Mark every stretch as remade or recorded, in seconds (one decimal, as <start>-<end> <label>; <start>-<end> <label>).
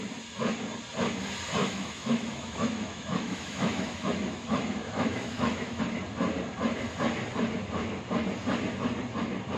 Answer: 0.0-1.6 recorded; 1.6-5.8 remade; 5.8-9.6 recorded